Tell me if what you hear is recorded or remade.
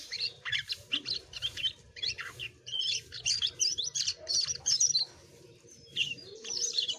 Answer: remade